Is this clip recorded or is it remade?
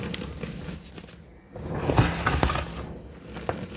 recorded